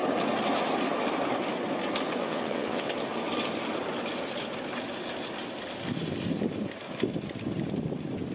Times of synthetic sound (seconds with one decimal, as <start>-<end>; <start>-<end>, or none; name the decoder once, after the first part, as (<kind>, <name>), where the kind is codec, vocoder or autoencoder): 2.2-2.9 (vocoder, WaveNeXt)